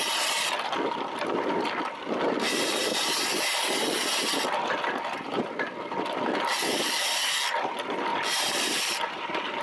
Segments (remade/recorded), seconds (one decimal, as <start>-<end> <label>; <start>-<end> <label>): 0.0-8.1 recorded; 8.1-8.8 remade; 8.8-9.6 recorded